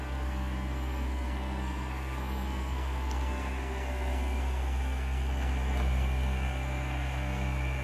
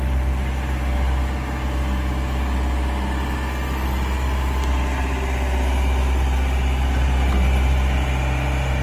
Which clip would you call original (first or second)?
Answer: second